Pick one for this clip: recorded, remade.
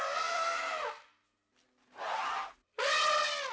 recorded